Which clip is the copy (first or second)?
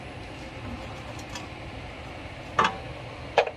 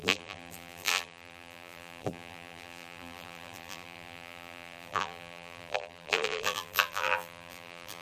second